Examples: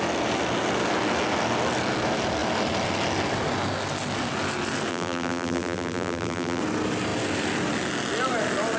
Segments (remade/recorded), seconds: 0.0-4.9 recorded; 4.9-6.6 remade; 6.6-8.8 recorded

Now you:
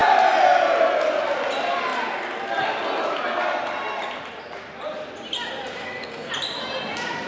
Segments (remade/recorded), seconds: 0.0-5.8 recorded; 5.8-6.3 remade; 6.3-7.3 recorded

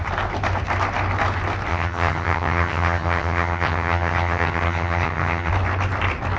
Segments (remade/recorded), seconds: 0.0-1.7 recorded; 1.7-5.5 remade; 5.5-6.4 recorded

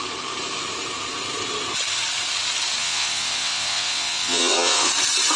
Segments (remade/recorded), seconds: 0.0-2.8 recorded; 2.8-4.9 remade; 4.9-5.4 recorded